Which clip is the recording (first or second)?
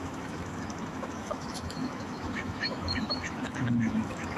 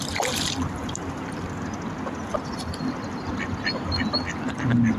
second